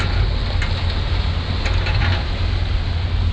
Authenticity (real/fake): real